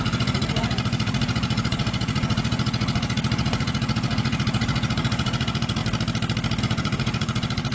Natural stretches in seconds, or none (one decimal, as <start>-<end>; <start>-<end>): 5.8-6.6